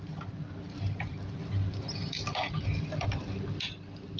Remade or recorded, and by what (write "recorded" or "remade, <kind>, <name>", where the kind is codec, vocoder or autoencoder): remade, vocoder, BigVGAN v2